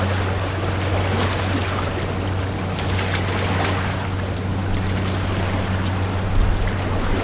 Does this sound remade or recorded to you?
recorded